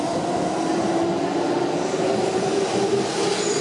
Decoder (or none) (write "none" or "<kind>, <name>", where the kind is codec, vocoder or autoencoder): none